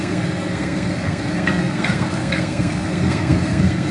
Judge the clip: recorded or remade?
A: remade